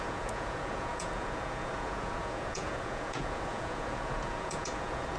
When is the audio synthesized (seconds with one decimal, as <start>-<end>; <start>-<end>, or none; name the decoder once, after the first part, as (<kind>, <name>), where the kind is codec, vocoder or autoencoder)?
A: 0.0-5.2 (vocoder, Vocos)